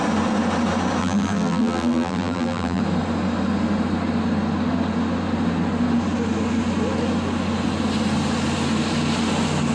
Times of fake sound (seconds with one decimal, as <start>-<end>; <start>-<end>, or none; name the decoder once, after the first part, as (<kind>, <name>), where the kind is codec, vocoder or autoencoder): 1.0-2.8 (vocoder, BigVGAN v2)